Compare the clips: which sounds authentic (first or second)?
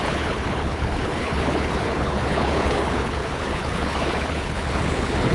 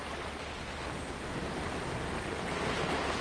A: second